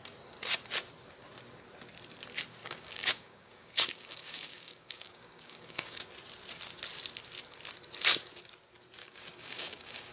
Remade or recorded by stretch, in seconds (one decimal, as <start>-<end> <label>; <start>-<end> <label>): 0.0-2.6 recorded; 2.6-6.1 remade; 6.1-9.0 recorded; 9.0-10.1 remade

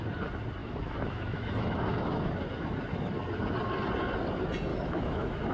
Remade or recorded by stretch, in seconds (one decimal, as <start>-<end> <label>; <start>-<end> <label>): 0.0-0.6 recorded; 0.6-2.3 remade; 2.3-4.7 recorded; 4.7-5.5 remade

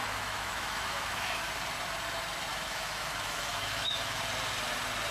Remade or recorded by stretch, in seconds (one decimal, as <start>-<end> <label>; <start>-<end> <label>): 0.0-1.5 remade; 1.5-2.5 recorded; 2.5-4.2 remade; 4.2-5.1 recorded

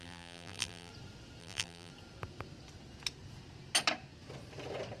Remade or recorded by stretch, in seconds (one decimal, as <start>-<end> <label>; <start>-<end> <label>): 0.0-0.9 remade; 0.9-1.4 recorded; 1.4-1.9 remade; 1.9-5.0 recorded